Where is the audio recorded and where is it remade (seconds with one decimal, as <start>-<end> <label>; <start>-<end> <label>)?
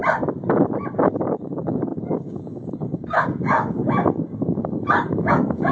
0.0-1.0 recorded; 1.0-5.7 remade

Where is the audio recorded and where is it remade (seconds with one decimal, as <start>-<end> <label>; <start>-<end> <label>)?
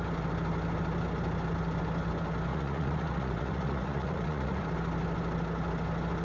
0.0-2.5 recorded; 2.5-4.6 remade; 4.6-6.2 recorded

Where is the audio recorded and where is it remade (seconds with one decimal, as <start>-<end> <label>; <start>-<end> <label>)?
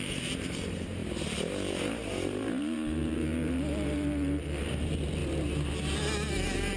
0.0-1.0 remade; 1.0-1.7 recorded; 1.7-5.2 remade; 5.2-6.8 recorded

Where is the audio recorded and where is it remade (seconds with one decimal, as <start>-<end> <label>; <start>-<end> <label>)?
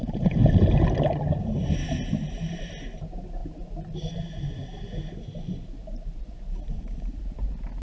0.0-0.4 remade; 0.4-1.3 recorded; 1.3-7.8 remade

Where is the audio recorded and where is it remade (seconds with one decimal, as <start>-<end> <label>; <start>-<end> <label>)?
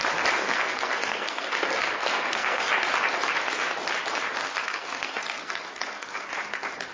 0.0-0.4 recorded; 0.4-2.7 remade; 2.7-4.4 recorded; 4.4-6.3 remade; 6.3-6.9 recorded